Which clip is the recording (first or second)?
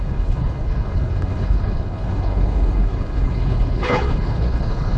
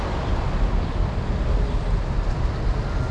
second